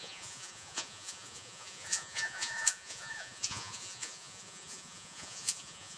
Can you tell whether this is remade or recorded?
remade